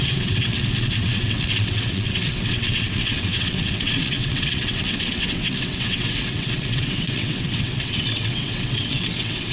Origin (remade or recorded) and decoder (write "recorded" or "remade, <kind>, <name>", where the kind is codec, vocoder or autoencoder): remade, vocoder, WaveNeXt